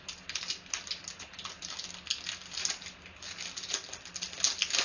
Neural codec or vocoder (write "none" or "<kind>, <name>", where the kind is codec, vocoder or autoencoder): none